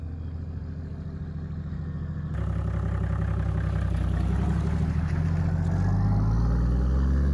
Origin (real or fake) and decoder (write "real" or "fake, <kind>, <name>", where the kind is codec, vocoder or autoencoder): real